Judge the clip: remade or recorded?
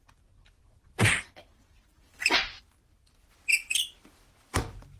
recorded